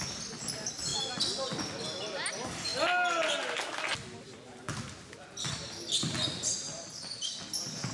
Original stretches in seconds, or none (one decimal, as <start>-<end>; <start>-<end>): 0.0-7.9